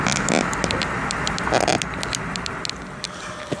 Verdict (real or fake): real